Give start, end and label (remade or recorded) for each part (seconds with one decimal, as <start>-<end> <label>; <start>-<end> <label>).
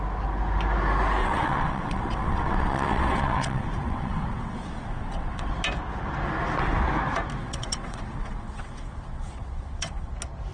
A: 0.0-1.2 recorded; 1.2-5.5 remade; 5.5-7.4 recorded; 7.4-10.1 remade; 10.1-10.5 recorded